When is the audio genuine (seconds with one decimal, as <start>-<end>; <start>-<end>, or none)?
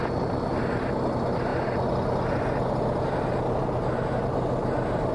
0.0-5.1